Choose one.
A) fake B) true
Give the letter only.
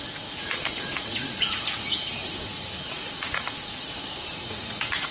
A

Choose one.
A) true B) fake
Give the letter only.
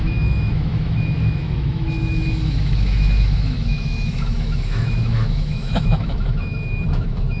B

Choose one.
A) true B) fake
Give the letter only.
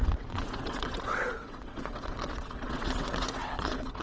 B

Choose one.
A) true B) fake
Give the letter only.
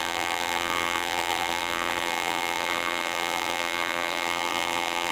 B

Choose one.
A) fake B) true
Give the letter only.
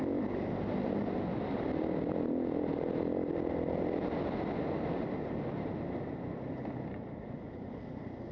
B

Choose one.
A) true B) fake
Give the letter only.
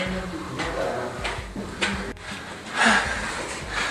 A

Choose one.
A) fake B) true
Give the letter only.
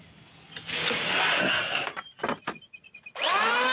B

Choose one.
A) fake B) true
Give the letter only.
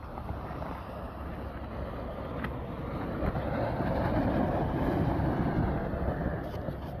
B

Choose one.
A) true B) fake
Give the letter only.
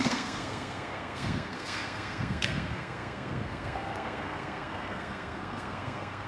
B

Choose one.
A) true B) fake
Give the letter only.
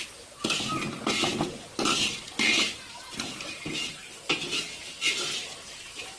A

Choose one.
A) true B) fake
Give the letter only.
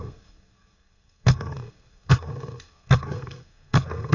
B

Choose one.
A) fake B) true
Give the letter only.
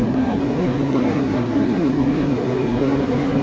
A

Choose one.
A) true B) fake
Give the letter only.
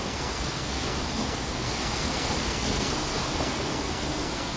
B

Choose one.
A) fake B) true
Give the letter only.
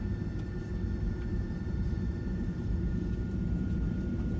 A